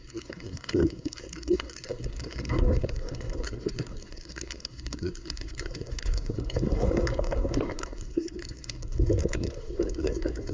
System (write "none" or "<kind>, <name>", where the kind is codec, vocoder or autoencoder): codec, SNAC